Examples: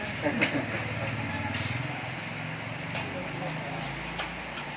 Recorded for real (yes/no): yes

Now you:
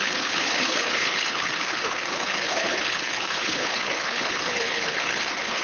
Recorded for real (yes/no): no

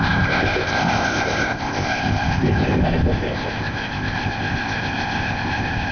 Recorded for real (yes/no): no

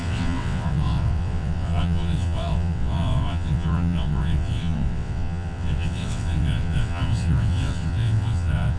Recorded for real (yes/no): no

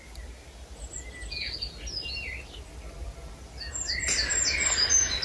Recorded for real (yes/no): yes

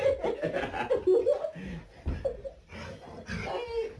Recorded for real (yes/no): yes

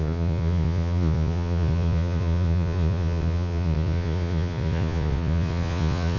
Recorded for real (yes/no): no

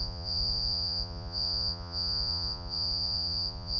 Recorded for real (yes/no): no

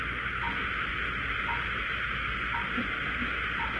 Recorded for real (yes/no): yes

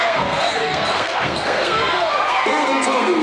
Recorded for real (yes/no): no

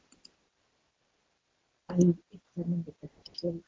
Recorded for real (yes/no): yes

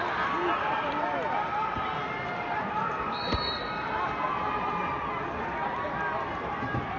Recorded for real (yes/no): yes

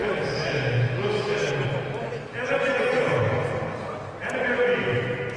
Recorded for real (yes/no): yes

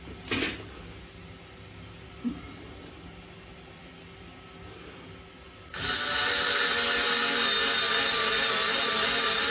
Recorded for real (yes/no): yes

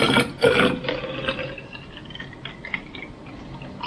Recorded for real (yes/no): yes